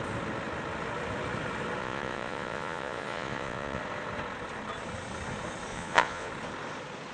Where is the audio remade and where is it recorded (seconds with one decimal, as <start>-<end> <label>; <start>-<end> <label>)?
0.0-1.8 recorded; 1.8-3.8 remade; 3.8-5.7 recorded; 5.7-6.3 remade; 6.3-7.1 recorded